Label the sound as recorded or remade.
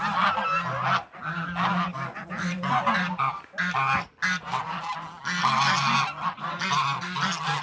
recorded